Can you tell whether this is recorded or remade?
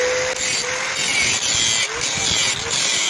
recorded